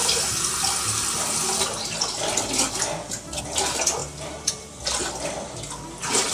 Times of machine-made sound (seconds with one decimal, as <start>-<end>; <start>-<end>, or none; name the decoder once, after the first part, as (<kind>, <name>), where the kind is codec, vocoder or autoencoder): 3.4-4.0 (vocoder, BigVGAN v2); 4.5-6.3